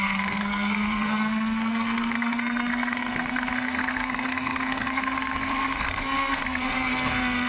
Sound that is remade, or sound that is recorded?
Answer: remade